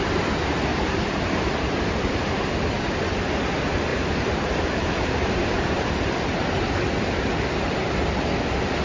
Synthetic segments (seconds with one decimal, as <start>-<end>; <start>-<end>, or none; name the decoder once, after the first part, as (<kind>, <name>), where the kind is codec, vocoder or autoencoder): 0.7-2.3 (vocoder, BigVGAN v2); 3.9-5.8

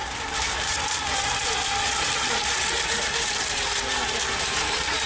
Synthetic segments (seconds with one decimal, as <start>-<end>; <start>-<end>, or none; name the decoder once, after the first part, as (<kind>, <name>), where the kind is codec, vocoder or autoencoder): none

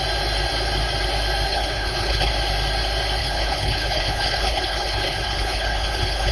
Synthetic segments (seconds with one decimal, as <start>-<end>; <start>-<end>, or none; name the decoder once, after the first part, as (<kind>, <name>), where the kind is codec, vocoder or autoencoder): 1.5-2.3 (codec, HILCodec); 3.2-6.3

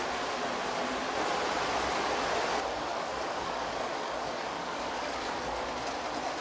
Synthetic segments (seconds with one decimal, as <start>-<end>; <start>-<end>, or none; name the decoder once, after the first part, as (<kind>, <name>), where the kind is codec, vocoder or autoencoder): 2.9-5.6 (codec, DAC)

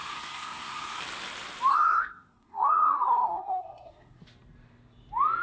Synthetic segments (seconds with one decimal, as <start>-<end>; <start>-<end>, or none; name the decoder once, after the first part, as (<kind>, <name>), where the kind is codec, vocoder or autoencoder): 0.0-1.0 (codec, SNAC); 1.7-4.2

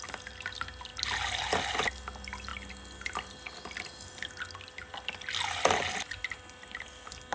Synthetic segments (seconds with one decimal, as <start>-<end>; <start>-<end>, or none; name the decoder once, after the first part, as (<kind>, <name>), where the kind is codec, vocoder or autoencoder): none